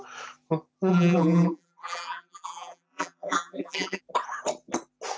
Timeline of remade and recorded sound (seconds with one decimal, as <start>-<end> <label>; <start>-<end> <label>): 0.0-0.9 recorded; 0.9-4.0 remade; 4.0-5.2 recorded

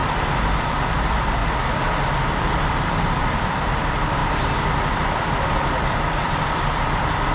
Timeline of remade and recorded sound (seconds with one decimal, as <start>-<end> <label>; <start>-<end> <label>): 0.0-1.4 remade; 1.4-2.1 recorded; 2.1-4.2 remade; 4.2-5.0 recorded; 5.0-7.3 remade

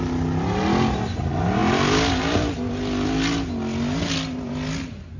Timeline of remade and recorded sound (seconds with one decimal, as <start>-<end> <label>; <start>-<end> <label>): 0.0-5.2 recorded

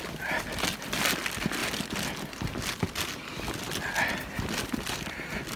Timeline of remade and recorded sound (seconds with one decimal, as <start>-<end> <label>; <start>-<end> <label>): 0.0-5.6 recorded

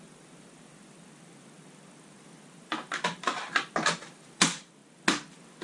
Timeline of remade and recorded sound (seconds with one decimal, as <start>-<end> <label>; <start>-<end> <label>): 0.0-4.8 remade; 4.8-5.6 recorded

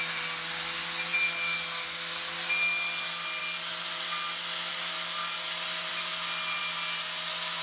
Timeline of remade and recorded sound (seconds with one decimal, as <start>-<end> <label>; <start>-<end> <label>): 0.0-7.6 recorded